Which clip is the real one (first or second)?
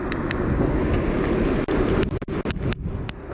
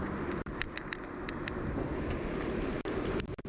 first